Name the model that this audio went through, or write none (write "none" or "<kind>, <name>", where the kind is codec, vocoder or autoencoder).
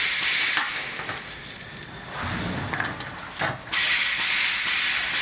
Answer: none